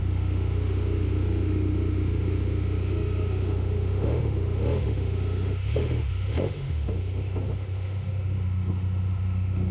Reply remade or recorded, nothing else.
remade